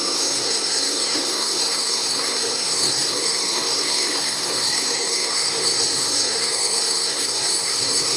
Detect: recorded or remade remade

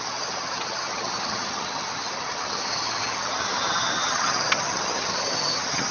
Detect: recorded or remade remade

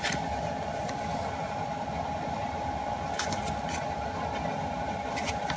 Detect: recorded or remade recorded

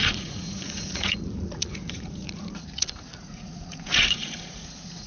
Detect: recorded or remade remade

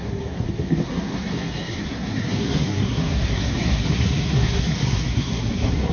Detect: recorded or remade remade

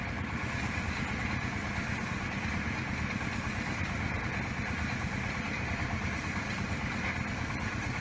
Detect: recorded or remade recorded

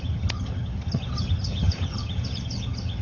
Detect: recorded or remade remade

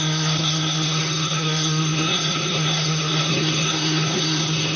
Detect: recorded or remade remade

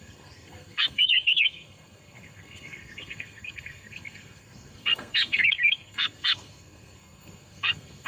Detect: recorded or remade remade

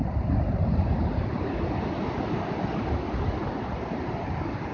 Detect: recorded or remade recorded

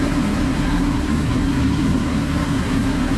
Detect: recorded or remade remade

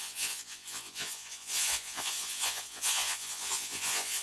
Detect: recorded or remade remade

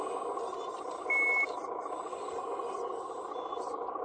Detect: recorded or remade recorded